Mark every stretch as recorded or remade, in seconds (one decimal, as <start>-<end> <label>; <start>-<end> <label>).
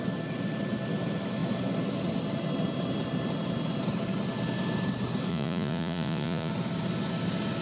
0.0-5.3 recorded; 5.3-6.5 remade; 6.5-7.6 recorded